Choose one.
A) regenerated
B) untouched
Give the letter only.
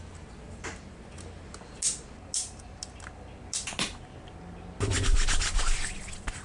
B